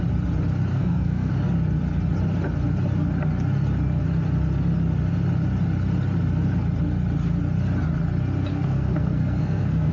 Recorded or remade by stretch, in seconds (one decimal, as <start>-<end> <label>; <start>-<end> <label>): 0.0-0.7 recorded; 0.7-1.3 remade; 1.3-8.5 recorded; 8.5-9.9 remade